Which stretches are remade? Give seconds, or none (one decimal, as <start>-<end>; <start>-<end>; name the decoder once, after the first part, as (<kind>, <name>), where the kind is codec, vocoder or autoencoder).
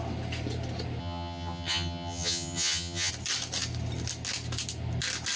1.0-3.1 (vocoder, HiFi-GAN)